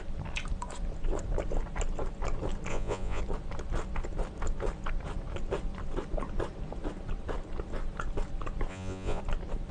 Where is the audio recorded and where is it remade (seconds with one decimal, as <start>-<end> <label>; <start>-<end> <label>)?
0.0-2.7 recorded; 2.7-3.2 remade; 3.2-8.7 recorded; 8.7-9.2 remade; 9.2-9.7 recorded